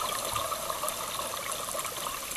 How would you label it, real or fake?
real